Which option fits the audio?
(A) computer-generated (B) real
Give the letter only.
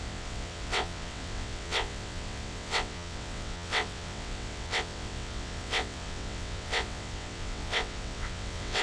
A